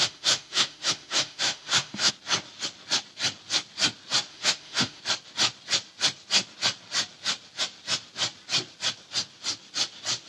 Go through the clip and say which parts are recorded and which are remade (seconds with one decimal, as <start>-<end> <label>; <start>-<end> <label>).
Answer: 0.0-2.1 remade; 2.1-4.3 recorded; 4.3-5.0 remade; 5.0-10.3 recorded